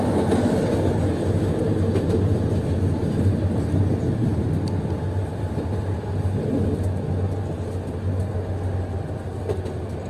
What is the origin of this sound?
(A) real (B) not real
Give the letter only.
A